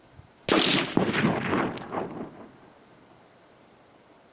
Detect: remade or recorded recorded